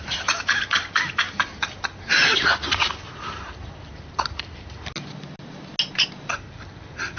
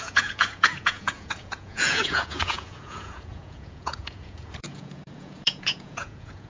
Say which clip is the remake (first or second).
second